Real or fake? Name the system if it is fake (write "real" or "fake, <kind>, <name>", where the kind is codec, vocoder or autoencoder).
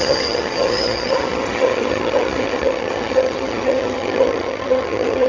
fake, vocoder, HiFi-GAN